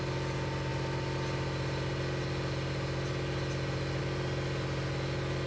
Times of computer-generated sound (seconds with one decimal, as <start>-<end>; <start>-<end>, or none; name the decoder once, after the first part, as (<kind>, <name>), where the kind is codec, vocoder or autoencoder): none